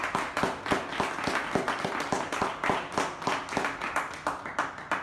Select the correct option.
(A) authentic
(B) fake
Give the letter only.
A